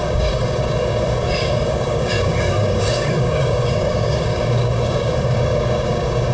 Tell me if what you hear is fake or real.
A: fake